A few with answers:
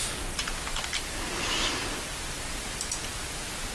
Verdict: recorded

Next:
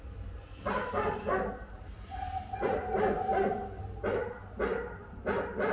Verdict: recorded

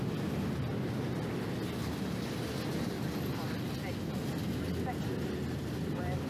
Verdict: recorded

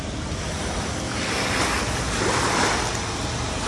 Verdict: recorded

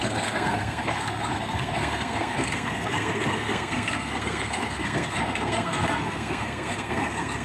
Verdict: remade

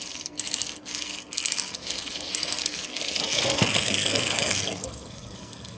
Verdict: remade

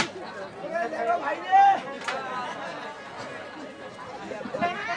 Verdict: recorded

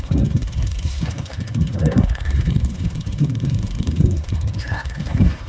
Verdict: remade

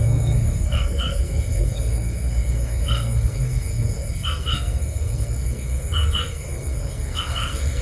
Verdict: remade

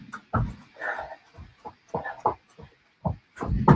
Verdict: recorded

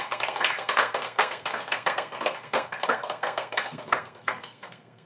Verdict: remade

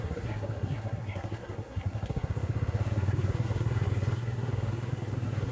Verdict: remade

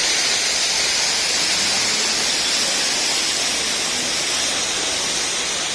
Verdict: recorded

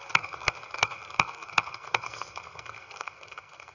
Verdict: remade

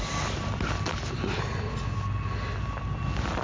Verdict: recorded